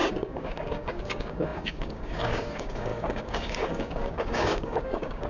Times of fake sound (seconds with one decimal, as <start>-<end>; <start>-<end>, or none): 0.0-5.3